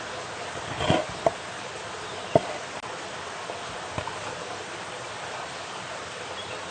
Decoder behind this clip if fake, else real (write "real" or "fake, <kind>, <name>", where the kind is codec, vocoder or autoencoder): real